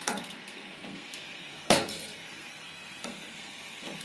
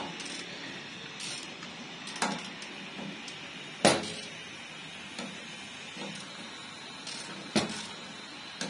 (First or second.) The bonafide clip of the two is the second